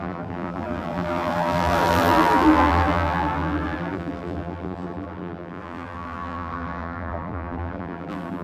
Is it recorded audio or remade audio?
remade